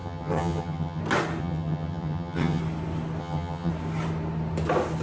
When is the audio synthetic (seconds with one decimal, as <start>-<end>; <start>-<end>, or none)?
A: 0.0-1.0; 1.4-2.6; 3.2-3.7